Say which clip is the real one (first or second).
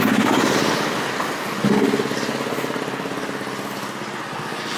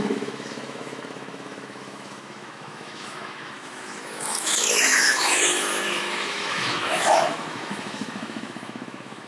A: first